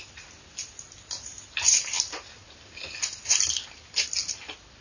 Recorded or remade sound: recorded